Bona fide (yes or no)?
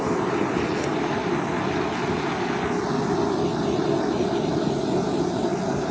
yes